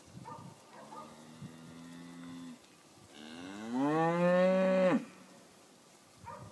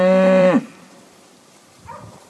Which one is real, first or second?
first